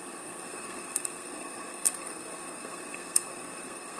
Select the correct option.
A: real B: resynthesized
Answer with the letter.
B